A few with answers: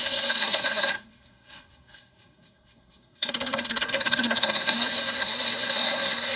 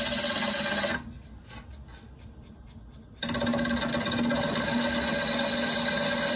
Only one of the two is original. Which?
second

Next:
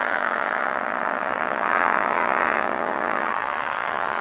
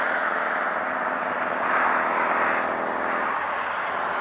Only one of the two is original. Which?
second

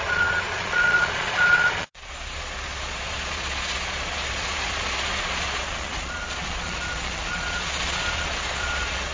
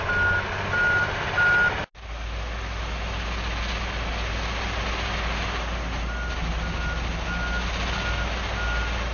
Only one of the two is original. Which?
second